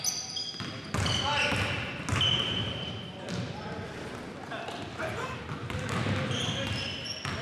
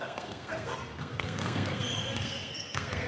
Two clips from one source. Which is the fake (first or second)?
second